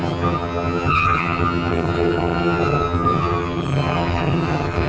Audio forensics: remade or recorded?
remade